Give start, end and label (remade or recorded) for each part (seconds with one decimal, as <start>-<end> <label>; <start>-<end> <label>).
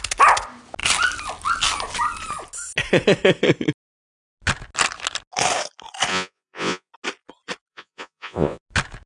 0.0-6.1 recorded; 6.1-6.9 remade; 6.9-7.7 recorded; 7.7-8.6 remade; 8.6-9.1 recorded